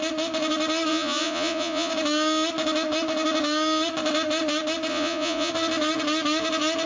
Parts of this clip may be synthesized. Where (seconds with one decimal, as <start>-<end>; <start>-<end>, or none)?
0.9-1.9; 4.9-5.5